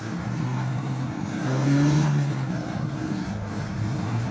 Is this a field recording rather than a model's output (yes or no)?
no